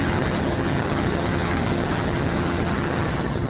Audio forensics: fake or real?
fake